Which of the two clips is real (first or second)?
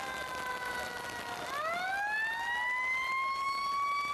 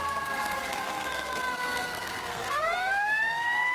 first